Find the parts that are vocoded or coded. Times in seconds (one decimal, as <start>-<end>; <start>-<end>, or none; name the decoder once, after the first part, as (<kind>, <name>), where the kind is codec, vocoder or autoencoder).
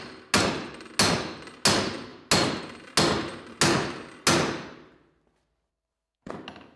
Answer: 5.7-6.3 (codec, SNAC)